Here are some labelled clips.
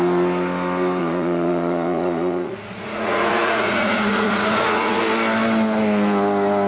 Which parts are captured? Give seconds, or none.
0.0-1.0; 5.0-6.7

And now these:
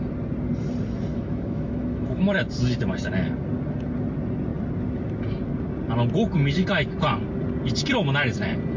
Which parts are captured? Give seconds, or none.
0.0-1.1; 2.4-8.8

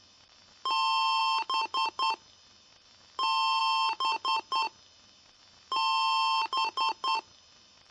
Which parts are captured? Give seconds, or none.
0.0-7.9

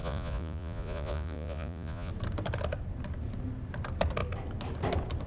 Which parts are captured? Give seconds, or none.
2.1-5.3

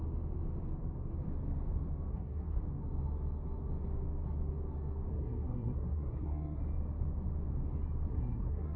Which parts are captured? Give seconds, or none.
0.0-2.1; 2.6-5.1; 6.6-8.1

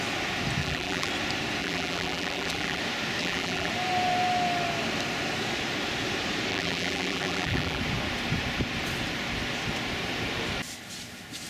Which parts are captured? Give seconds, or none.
0.0-0.6; 1.1-1.6; 2.8-3.2; 3.7-6.5; 7.8-11.5

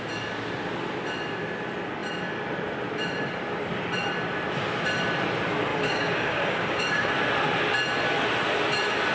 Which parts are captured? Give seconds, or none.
0.0-5.7; 7.1-9.1